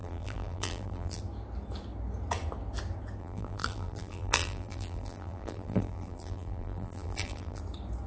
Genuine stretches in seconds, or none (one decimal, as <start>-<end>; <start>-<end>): 1.2-3.2; 7.6-8.1